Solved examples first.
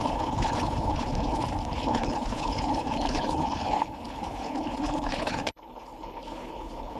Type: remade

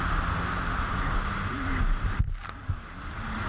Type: recorded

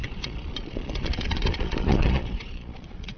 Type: remade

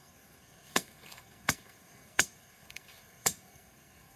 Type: remade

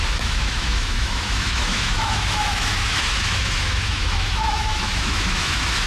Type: remade